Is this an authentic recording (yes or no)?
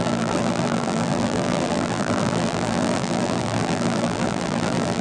no